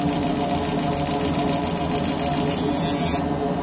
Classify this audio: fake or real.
real